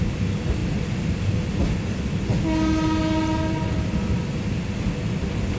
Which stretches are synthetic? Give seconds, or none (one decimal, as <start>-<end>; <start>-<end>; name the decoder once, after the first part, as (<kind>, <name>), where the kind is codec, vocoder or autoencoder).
none